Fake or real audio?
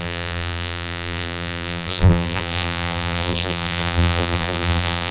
fake